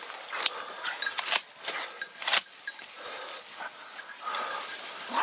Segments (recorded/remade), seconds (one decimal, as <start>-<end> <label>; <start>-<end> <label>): 0.0-5.2 recorded